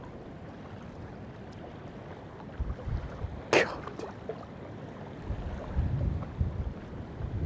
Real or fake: real